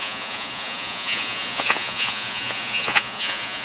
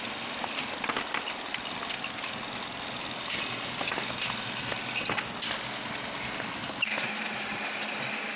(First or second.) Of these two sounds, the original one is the second